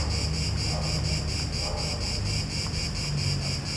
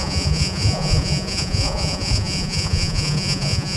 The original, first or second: first